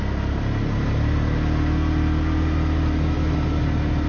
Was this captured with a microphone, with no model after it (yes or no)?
yes